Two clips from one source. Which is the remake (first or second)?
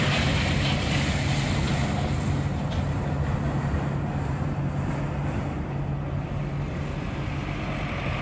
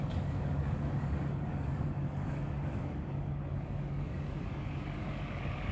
second